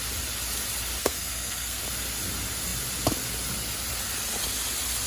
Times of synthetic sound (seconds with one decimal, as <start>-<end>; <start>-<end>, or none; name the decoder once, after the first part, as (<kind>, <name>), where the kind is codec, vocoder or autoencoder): 1.0-1.8 (codec, SNAC)